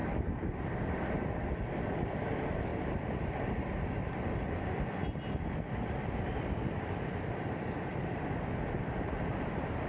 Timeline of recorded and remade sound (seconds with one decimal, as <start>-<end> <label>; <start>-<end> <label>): 0.0-9.9 recorded